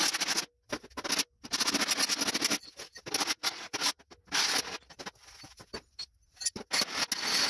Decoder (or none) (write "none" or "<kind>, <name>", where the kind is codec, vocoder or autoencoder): none